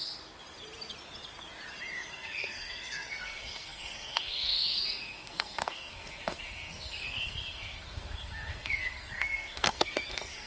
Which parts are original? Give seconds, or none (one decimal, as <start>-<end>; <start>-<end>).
0.0-2.1